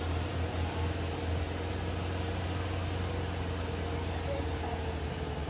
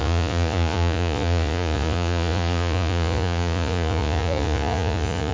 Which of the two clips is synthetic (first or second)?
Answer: second